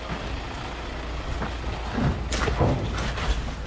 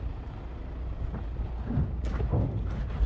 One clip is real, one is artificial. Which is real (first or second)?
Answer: first